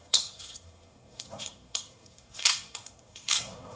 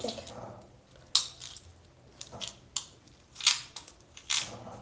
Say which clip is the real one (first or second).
second